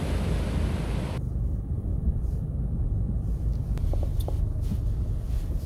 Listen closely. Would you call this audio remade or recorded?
recorded